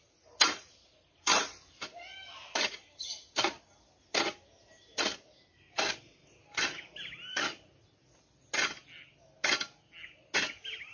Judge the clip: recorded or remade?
recorded